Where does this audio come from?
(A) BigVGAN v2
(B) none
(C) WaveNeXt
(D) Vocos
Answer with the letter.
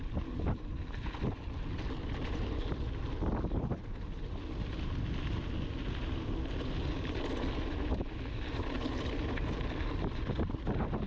B